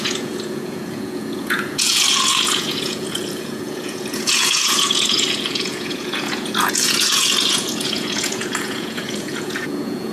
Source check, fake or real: fake